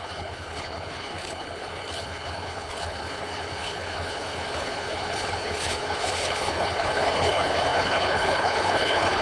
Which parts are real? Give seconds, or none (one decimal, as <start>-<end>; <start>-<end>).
none